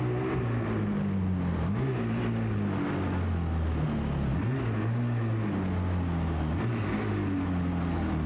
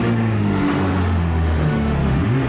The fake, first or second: second